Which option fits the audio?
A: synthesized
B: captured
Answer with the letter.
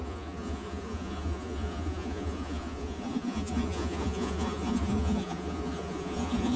A